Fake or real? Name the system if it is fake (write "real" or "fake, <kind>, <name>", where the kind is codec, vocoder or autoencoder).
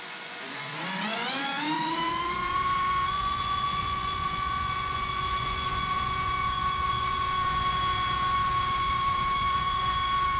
fake, vocoder, Vocos